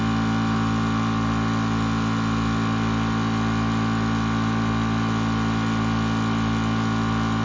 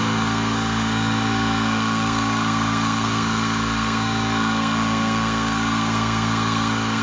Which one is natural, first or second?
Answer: first